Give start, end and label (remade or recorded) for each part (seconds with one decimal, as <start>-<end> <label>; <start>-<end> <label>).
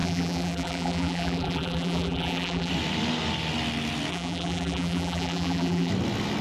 0.0-2.7 remade; 2.7-4.1 recorded; 4.1-5.9 remade; 5.9-6.4 recorded